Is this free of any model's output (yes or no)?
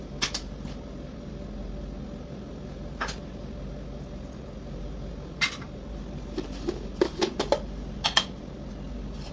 yes